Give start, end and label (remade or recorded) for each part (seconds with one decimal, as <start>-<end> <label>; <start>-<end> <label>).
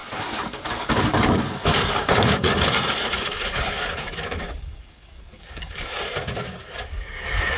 0.0-2.5 remade; 2.5-3.0 recorded; 3.0-7.6 remade